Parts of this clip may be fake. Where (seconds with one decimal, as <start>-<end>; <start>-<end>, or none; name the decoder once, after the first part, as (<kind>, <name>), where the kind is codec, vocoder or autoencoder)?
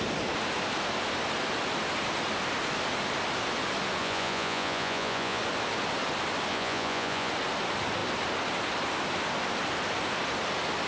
4.0-5.4 (vocoder, Vocos); 6.5-7.3